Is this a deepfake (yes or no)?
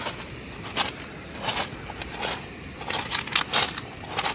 no